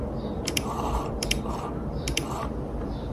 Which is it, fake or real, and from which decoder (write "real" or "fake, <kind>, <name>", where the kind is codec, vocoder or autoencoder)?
real